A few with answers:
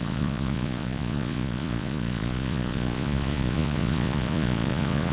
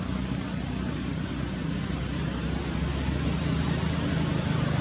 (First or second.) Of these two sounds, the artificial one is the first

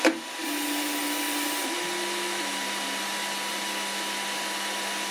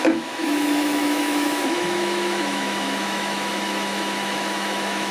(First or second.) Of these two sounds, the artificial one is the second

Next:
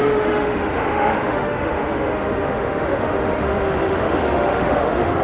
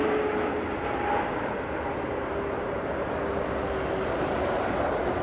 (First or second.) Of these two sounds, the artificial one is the first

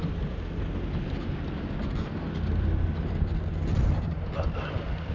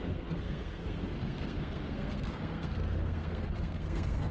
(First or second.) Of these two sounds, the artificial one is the second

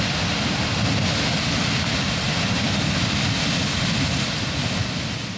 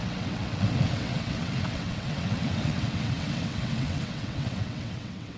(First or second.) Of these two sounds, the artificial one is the second